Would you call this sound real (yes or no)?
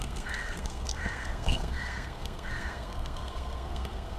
no